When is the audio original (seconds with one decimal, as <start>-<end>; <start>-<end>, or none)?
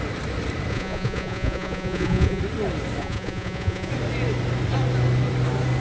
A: 0.0-0.7; 2.4-3.0; 3.9-5.8